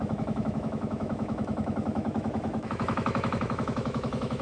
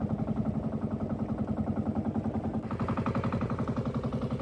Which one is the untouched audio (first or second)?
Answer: second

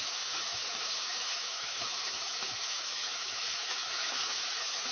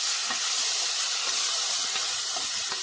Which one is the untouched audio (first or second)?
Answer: second